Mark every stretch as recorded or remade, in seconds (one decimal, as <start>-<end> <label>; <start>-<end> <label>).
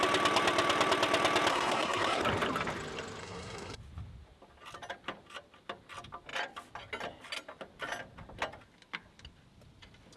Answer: 0.0-1.5 recorded; 1.5-2.2 remade; 2.2-3.2 recorded; 3.2-3.8 remade; 3.8-10.2 recorded